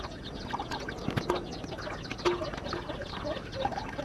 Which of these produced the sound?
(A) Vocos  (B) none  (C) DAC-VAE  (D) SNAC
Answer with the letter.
B